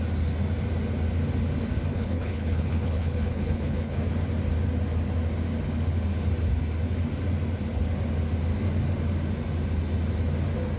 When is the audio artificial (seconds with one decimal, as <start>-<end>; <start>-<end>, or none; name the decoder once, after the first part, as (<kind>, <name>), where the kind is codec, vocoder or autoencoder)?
1.9-4.1 (codec, HILCodec)